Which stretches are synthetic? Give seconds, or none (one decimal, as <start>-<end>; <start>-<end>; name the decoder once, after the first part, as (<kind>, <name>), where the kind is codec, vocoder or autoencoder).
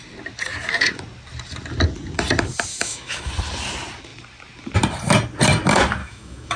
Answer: 2.7-3.3 (autoencoder, DAC-VAE); 6.0-6.6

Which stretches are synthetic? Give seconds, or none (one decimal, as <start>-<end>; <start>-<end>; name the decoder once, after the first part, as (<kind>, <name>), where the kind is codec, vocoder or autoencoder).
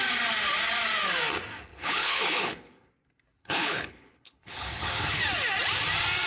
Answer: 1.7-2.9 (codec, HILCodec); 3.4-5.2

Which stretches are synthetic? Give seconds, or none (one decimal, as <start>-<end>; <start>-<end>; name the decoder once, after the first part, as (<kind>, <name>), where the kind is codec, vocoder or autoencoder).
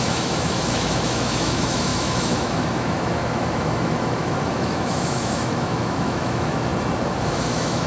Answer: 0.0-6.7 (autoencoder, DAC-VAE); 7.3-7.9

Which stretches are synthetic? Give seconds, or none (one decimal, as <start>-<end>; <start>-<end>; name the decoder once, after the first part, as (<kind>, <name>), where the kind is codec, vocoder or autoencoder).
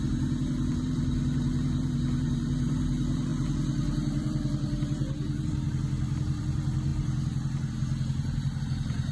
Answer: 0.0-9.1 (vocoder, BigVGAN v2)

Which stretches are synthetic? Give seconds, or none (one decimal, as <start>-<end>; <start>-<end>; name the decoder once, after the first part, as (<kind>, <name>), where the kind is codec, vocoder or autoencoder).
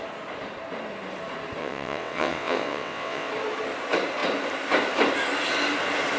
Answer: 1.6-3.3 (vocoder, WaveNeXt)